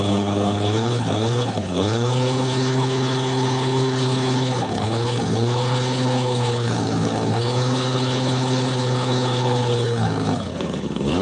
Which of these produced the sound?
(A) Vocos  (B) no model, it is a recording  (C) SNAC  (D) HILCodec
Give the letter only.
D